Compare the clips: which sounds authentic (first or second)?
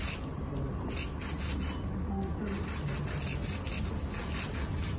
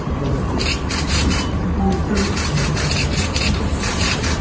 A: first